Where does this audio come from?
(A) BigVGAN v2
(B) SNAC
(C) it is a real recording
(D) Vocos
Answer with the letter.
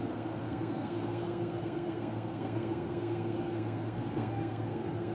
B